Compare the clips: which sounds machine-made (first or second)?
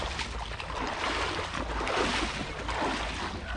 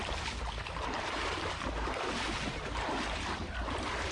second